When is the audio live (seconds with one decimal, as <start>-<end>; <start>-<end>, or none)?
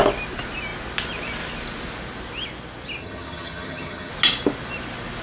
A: 0.0-3.0; 4.1-5.2